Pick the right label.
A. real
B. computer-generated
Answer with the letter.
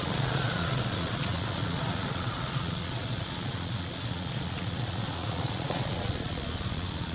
B